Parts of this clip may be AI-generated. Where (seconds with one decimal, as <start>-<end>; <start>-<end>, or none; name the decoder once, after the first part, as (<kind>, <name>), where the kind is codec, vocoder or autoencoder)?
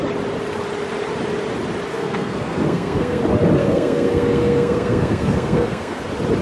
1.9-3.2 (codec, SNAC); 3.6-6.0